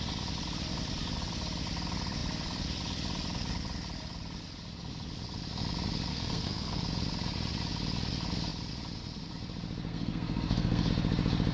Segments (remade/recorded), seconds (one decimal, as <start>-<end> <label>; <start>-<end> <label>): 0.0-6.1 recorded; 6.1-6.8 remade; 6.8-9.9 recorded; 9.9-10.9 remade; 10.9-11.5 recorded